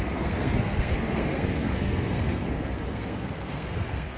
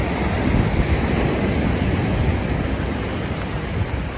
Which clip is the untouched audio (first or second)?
second